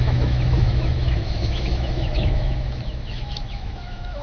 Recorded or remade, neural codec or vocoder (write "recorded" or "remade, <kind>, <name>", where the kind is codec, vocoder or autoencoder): remade, autoencoder, DAC-VAE